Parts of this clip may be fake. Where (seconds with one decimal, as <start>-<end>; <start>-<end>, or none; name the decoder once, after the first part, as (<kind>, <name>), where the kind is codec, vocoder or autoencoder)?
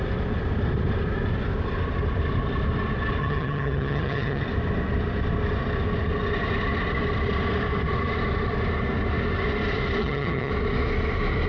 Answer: 3.2-4.4 (vocoder, HiFi-GAN); 10.0-10.5